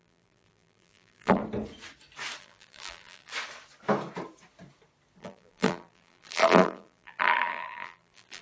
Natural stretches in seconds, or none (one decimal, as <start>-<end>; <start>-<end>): 1.4-2.4; 3.3-5.2